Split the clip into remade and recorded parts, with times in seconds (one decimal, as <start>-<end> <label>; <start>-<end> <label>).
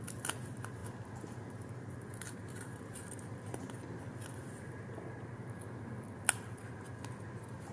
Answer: 0.0-7.7 recorded